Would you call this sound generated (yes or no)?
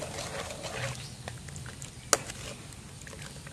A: no